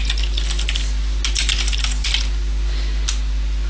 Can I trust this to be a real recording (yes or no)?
yes